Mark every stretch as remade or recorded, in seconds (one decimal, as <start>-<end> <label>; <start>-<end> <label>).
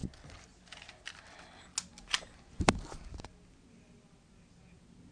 0.0-5.1 recorded